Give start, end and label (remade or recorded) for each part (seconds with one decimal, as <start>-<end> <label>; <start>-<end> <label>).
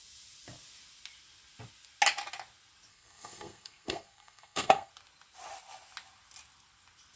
0.0-2.9 recorded; 2.9-4.9 remade; 4.9-7.2 recorded